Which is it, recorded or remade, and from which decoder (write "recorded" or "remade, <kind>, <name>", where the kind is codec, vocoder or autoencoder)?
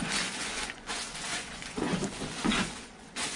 remade, vocoder, Vocos